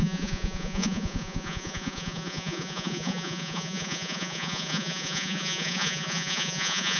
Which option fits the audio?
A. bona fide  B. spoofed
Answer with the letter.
B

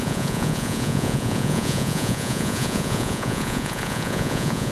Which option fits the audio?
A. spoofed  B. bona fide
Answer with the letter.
A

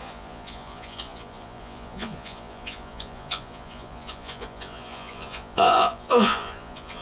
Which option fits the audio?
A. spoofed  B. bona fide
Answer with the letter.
A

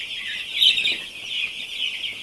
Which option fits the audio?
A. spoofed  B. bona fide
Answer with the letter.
B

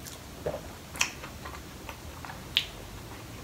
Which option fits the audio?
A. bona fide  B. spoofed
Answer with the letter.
A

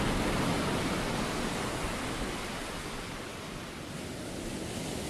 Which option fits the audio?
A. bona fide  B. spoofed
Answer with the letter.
A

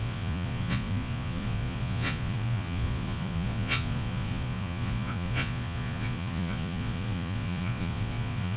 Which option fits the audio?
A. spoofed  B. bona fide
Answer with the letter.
A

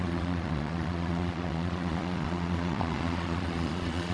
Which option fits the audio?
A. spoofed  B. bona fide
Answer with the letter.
A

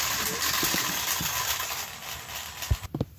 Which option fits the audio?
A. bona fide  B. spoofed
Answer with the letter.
A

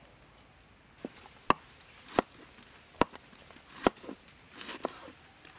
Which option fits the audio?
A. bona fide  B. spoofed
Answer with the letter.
A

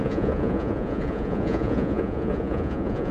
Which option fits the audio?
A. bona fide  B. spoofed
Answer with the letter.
B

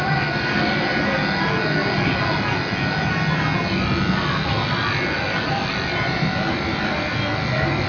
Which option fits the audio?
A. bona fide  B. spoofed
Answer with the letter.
A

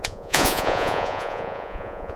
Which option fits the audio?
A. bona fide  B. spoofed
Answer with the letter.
B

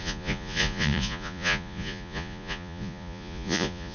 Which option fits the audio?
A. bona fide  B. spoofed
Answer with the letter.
B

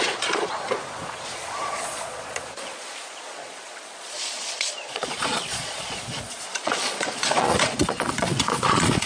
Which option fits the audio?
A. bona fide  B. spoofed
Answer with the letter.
B